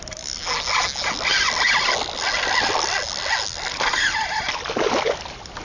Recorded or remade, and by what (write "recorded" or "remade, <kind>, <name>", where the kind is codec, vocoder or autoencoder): recorded